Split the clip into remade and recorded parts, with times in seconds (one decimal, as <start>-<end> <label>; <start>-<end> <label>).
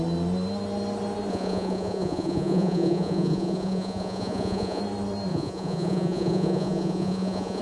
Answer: 0.0-1.3 recorded; 1.3-4.8 remade; 4.8-5.3 recorded; 5.3-7.6 remade